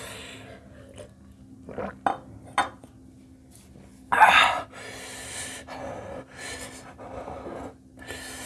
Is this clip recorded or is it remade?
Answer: recorded